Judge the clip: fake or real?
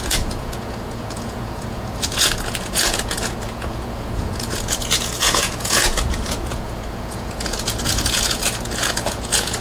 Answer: fake